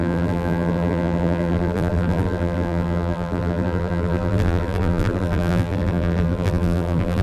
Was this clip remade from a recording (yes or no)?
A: yes